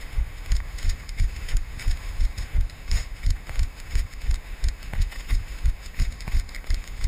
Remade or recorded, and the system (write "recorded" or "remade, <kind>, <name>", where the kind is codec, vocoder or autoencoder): remade, autoencoder, DAC-VAE